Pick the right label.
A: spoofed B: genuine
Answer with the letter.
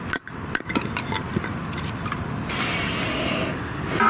B